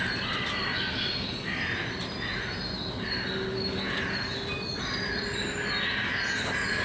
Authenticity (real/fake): real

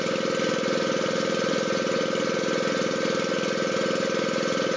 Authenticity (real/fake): real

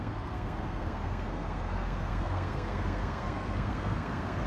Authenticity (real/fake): fake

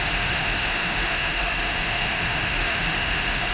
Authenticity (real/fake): fake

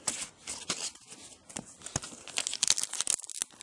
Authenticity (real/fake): real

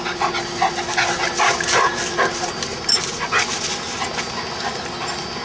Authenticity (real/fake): real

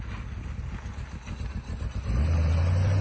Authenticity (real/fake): real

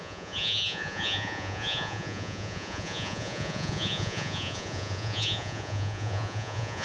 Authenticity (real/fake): fake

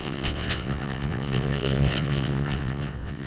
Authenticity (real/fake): fake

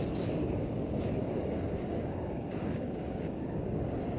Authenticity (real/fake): fake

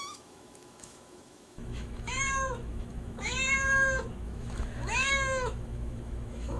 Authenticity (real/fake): fake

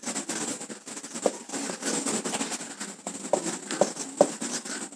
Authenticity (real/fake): real